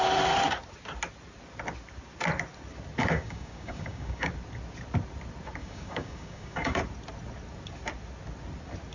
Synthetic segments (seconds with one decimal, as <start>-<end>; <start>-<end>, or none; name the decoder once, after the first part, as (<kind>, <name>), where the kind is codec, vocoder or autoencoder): 3.0-4.3 (codec, DAC); 5.6-6.8